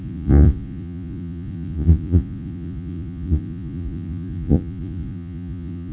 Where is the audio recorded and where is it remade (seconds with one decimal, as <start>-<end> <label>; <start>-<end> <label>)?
0.0-5.9 remade